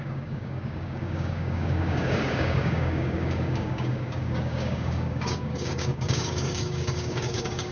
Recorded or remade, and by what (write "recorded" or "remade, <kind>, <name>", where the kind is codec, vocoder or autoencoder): remade, codec, DAC